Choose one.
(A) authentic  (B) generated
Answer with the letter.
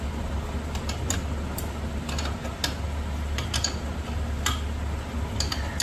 A